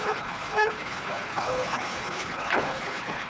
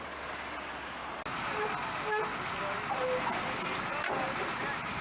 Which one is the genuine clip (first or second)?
second